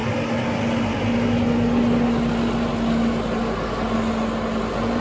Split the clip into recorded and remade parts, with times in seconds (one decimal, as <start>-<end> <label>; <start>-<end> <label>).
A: 0.0-5.0 recorded